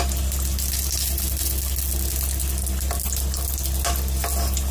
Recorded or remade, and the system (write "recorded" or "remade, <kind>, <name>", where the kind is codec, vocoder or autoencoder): recorded